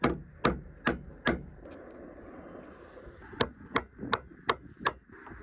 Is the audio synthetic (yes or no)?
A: no